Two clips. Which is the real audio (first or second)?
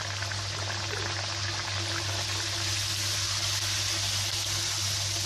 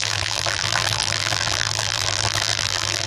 first